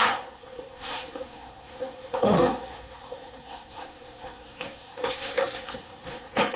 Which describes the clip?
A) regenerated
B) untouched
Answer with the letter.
A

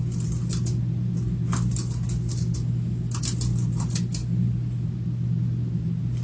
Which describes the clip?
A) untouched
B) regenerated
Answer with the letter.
A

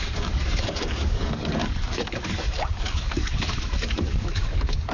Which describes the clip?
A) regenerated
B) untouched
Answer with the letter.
A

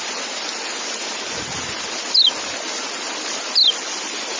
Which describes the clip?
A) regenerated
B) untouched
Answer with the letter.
B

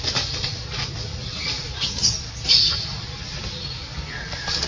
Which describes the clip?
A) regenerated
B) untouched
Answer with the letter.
B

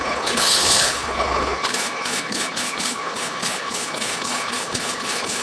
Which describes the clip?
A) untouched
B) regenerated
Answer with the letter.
B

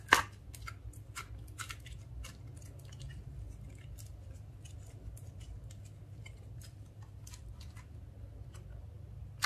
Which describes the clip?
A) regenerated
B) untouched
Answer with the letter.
B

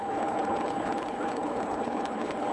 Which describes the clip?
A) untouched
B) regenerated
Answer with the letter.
B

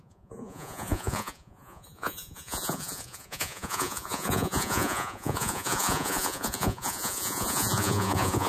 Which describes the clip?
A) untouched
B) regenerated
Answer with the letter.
B